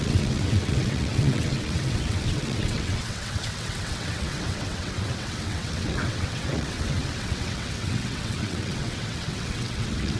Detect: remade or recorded remade